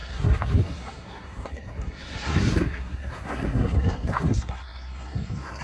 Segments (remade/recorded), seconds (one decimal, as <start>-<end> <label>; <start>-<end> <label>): 0.0-5.6 remade